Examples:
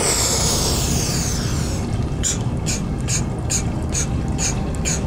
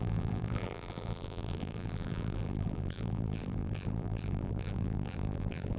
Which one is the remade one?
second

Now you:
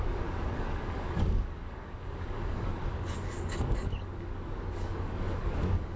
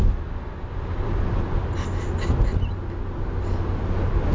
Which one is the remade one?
first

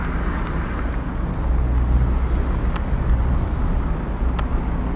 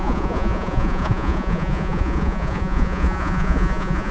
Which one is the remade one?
second